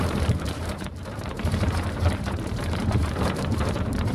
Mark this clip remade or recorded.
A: remade